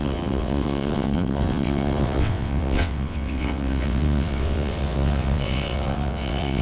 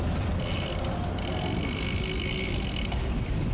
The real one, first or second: second